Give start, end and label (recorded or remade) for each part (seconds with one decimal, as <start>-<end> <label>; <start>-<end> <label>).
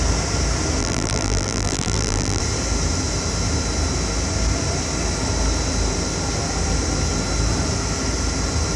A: 0.0-0.8 recorded; 0.8-2.4 remade; 2.4-8.8 recorded